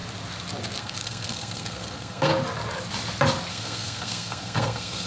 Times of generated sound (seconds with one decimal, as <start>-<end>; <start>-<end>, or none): 0.8-2.3; 3.5-5.1